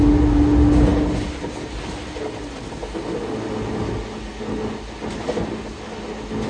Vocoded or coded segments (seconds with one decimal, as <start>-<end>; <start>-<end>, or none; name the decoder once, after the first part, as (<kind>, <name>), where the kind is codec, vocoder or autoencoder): none